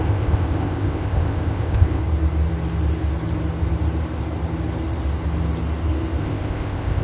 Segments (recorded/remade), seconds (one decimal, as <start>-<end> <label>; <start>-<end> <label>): 0.0-2.0 remade; 2.0-6.2 recorded; 6.2-7.0 remade

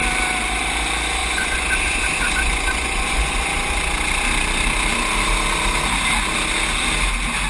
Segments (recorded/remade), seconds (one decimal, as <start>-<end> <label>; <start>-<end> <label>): 0.0-1.2 recorded; 1.2-3.8 remade; 3.8-7.5 recorded

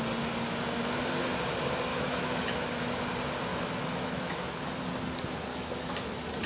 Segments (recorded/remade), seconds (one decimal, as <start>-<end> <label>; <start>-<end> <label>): 0.0-1.9 recorded; 1.9-2.9 remade; 2.9-3.5 recorded; 3.5-4.8 remade; 4.8-5.5 recorded; 5.5-6.5 remade

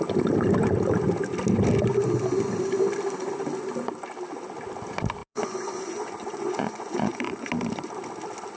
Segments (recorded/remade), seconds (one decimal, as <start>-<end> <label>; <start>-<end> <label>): 0.0-5.2 recorded; 5.2-7.5 remade; 7.5-8.6 recorded

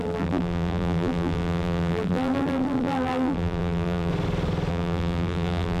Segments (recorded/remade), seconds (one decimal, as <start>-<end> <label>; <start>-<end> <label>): 0.0-4.1 remade; 4.1-4.7 recorded; 4.7-5.8 remade

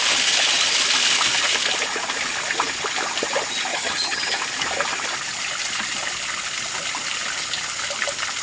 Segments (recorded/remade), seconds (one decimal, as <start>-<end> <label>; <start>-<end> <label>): 0.0-3.7 recorded; 3.7-4.4 remade; 4.4-8.4 recorded